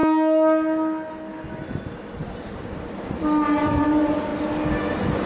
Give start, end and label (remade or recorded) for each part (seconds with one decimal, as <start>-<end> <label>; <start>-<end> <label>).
0.0-2.2 recorded; 2.2-3.8 remade; 3.8-5.3 recorded